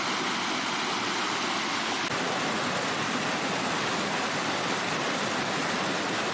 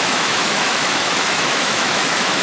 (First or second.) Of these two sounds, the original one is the first